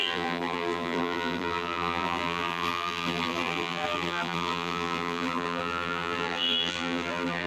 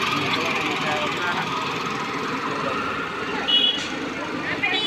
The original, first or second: second